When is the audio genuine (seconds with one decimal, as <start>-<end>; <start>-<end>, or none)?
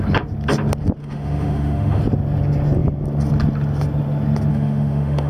0.0-1.0; 2.0-4.5